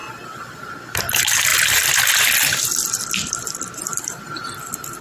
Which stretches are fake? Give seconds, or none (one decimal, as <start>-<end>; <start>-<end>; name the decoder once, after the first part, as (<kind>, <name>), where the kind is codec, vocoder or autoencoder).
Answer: 0.0-5.0 (vocoder, BigVGAN v2)